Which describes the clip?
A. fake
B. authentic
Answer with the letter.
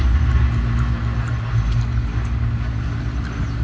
B